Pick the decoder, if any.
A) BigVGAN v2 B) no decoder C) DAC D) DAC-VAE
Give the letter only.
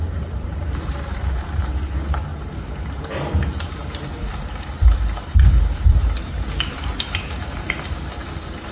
A